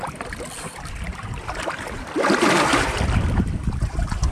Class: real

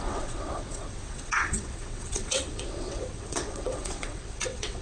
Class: fake